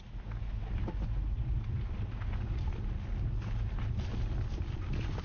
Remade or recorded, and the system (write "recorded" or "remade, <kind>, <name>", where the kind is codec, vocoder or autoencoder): recorded